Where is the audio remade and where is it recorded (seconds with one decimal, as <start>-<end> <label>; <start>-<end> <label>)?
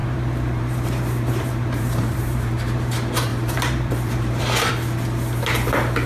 0.0-2.9 remade; 2.9-3.3 recorded; 3.3-4.7 remade; 4.7-6.1 recorded